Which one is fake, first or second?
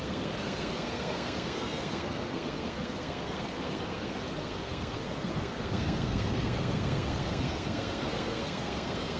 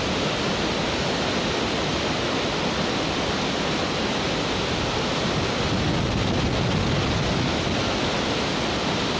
first